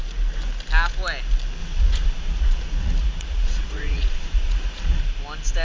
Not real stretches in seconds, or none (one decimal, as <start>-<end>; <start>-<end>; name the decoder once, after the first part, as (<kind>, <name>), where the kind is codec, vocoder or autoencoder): 1.6-5.0 (vocoder, Vocos)